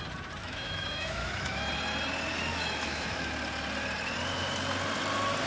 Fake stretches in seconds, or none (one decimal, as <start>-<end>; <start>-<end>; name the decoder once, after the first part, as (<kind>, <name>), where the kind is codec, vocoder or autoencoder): 0.4-1.7 (autoencoder, DAC-VAE); 2.5-3.3